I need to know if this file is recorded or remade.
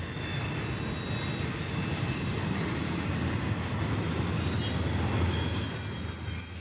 recorded